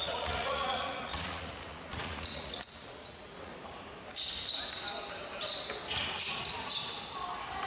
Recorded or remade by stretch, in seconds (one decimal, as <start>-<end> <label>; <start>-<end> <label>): 0.0-3.5 remade; 3.5-7.7 recorded